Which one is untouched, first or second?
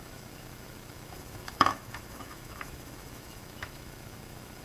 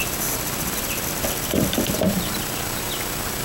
second